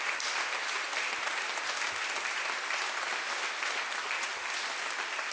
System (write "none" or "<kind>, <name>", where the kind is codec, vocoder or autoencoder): none